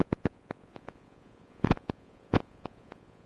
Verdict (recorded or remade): remade